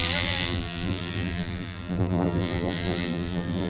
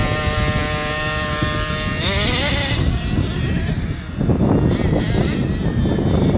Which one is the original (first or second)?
second